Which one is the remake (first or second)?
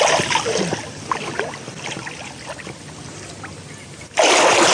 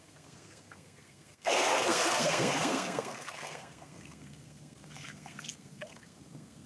second